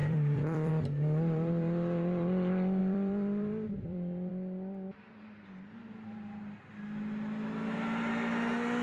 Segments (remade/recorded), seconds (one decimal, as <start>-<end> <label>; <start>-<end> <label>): 0.0-0.7 remade; 0.7-2.8 recorded; 2.8-4.3 remade; 4.3-8.8 recorded